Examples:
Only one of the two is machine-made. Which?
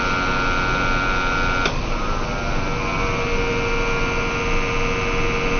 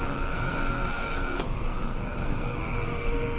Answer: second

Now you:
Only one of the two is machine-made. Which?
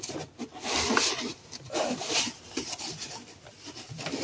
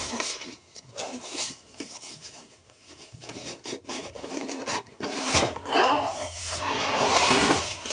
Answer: second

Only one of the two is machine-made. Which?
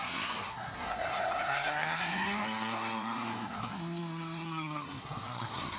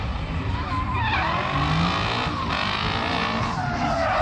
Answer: first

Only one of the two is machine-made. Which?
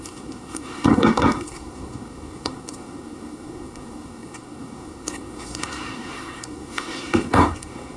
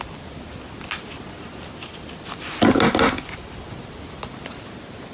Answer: first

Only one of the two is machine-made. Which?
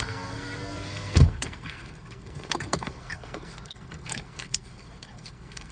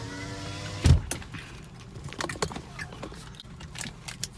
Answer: first